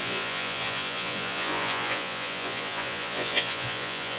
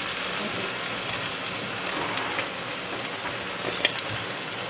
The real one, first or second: second